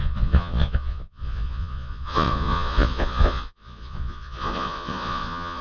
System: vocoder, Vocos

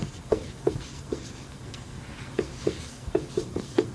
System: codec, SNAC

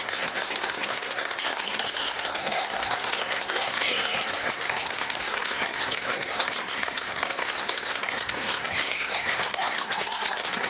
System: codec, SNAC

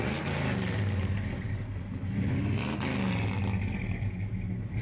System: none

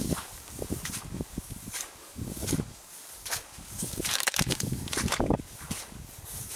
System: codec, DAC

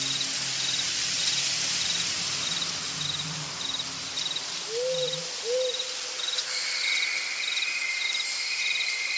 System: none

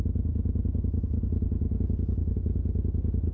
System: none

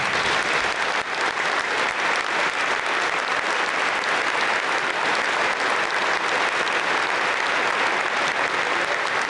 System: none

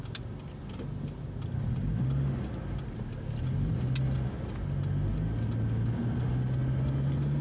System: none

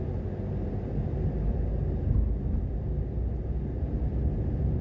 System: none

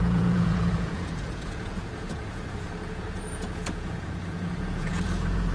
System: vocoder, Vocos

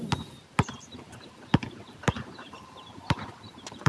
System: vocoder, BigVGAN v2